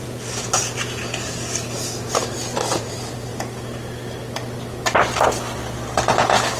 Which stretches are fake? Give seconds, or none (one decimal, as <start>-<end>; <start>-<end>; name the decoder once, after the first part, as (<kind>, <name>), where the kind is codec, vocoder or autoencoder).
none